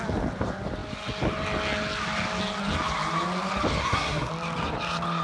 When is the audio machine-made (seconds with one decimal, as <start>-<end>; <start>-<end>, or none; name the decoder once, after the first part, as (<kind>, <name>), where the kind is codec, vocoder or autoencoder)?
3.8-4.3 (codec, SNAC)

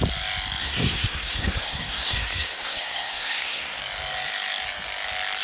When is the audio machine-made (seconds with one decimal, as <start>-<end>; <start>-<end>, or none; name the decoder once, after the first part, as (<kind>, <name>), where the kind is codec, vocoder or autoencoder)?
0.6-3.8 (codec, SNAC)

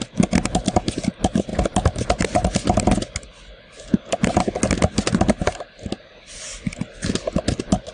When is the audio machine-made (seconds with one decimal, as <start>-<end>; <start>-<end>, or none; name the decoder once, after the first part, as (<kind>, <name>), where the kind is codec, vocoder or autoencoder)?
none

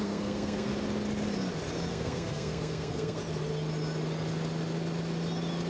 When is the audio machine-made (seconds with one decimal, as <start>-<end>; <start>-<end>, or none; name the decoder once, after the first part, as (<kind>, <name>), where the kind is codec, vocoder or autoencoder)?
0.0-0.7 (codec, SNAC); 1.9-3.2

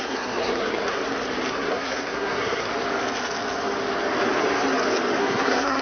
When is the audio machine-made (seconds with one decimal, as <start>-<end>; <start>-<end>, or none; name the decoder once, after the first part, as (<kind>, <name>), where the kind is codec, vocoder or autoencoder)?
0.0-1.0 (codec, SNAC); 1.5-2.7; 5.2-5.8

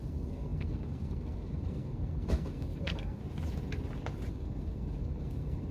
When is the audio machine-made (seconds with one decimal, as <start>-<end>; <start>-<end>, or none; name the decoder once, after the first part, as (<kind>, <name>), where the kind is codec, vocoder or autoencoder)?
0.0-3.2 (codec, SNAC); 4.3-5.7